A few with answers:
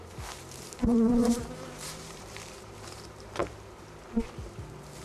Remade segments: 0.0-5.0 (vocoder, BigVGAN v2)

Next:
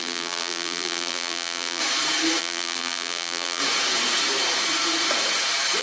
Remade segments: 0.0-1.8 (vocoder, BigVGAN v2); 2.4-3.6

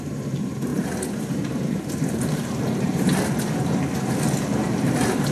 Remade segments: 0.0-3.1 (vocoder, BigVGAN v2); 4.4-5.3

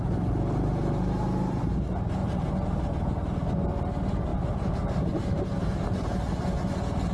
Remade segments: 2.2-3.5 (vocoder, BigVGAN v2)